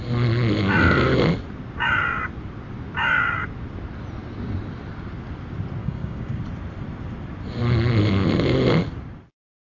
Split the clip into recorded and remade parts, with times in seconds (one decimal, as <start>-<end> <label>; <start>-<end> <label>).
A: 0.0-5.8 recorded; 5.8-6.4 remade; 6.4-9.7 recorded